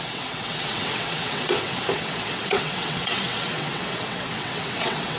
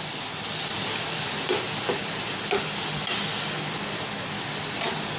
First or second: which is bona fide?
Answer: second